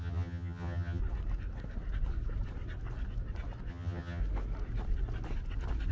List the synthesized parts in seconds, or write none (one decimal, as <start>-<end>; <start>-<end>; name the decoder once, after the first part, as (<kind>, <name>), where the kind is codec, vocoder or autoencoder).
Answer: 0.0-1.0 (vocoder, HiFi-GAN); 3.7-4.2